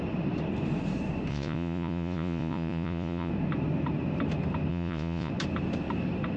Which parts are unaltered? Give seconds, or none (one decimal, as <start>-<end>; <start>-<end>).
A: 0.0-1.3; 3.3-4.7; 5.3-6.4